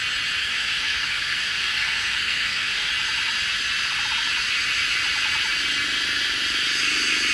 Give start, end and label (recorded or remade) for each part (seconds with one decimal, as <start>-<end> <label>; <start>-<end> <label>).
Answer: 0.0-0.4 recorded; 0.4-2.9 remade; 2.9-7.3 recorded